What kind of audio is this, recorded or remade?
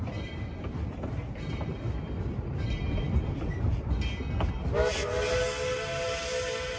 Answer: recorded